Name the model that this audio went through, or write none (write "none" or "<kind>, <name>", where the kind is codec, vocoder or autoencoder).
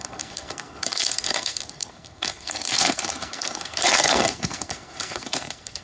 codec, SNAC